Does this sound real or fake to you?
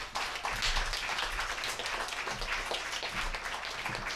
real